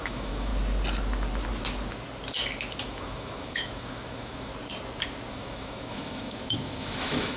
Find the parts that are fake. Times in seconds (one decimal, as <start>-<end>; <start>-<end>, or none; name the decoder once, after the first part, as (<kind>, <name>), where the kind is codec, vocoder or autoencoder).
0.0-0.5 (autoencoder, DAC-VAE); 2.8-4.5; 5.3-7.4